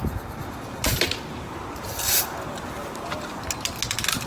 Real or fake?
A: real